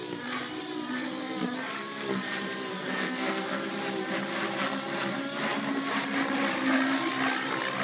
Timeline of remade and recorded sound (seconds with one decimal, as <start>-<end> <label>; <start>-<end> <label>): 0.0-2.7 recorded; 2.7-3.7 remade; 3.7-7.8 recorded